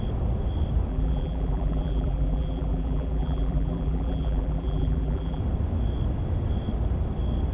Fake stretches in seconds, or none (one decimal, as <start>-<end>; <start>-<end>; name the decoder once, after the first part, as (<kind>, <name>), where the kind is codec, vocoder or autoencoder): 0.9-5.4 (vocoder, BigVGAN v2)